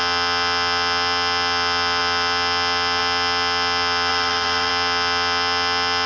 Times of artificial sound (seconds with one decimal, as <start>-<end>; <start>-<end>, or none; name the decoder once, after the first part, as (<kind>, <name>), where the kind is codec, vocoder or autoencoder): 4.1-4.7 (vocoder, BigVGAN v2)

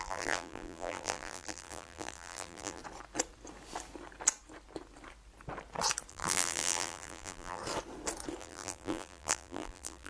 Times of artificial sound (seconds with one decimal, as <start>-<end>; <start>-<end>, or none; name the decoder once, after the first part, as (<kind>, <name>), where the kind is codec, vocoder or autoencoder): 0.0-2.8 (vocoder, BigVGAN v2); 6.1-7.6; 8.4-10.1

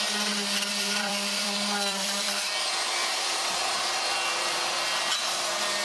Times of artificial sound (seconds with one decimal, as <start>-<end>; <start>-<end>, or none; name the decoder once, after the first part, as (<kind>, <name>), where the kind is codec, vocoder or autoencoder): 0.7-2.3 (vocoder, BigVGAN v2); 3.0-5.0

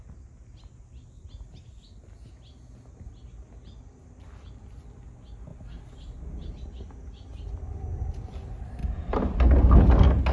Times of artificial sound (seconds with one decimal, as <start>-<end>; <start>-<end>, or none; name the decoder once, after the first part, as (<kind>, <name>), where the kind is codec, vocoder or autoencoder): none

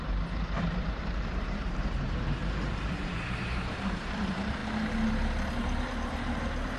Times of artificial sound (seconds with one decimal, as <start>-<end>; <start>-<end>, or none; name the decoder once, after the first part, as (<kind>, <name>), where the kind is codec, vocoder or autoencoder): 0.0-4.6 (vocoder, BigVGAN v2); 5.6-6.8

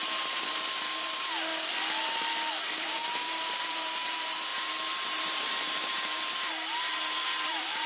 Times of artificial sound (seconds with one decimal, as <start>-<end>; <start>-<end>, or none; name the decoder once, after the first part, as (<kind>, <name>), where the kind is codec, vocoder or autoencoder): 0.0-1.5 (vocoder, BigVGAN v2); 2.5-7.9